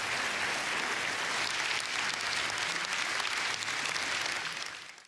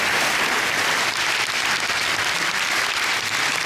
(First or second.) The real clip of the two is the first